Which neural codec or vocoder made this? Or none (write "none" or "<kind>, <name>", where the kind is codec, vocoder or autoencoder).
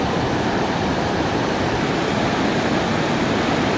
none